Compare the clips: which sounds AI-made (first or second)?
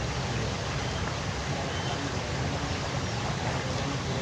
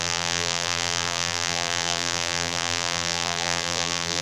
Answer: second